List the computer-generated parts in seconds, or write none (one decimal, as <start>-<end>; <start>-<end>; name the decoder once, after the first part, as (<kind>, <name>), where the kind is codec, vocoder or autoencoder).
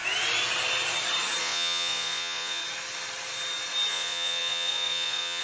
1.4-2.6 (vocoder, Vocos); 3.9-5.4